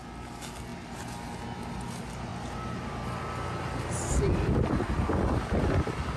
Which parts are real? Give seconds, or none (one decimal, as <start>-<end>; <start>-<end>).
0.0-6.2